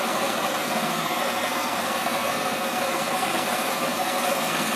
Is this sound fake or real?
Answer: fake